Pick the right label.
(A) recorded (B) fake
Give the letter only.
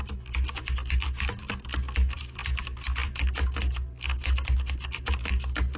A